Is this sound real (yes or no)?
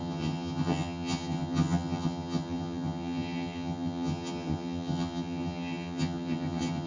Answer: no